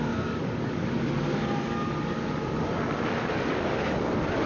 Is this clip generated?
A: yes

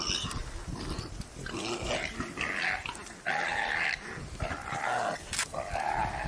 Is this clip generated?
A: no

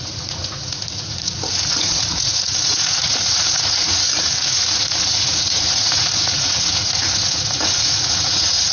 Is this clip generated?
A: yes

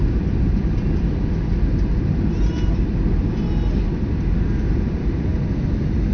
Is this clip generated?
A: no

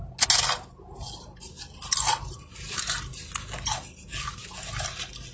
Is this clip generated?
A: no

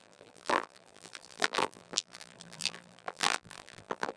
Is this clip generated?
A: yes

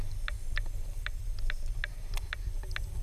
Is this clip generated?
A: no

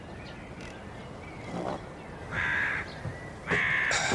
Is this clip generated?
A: no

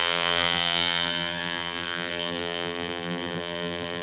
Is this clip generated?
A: yes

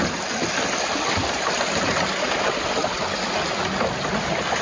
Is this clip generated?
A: no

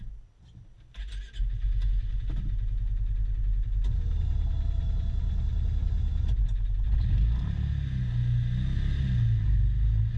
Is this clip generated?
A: no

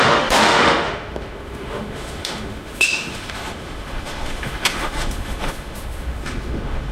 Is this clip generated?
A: yes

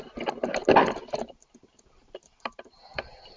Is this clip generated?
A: no